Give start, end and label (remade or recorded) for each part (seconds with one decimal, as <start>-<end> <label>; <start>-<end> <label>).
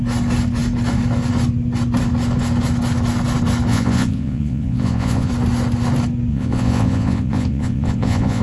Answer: 0.0-3.7 recorded; 3.7-5.3 remade; 5.3-6.3 recorded; 6.3-8.4 remade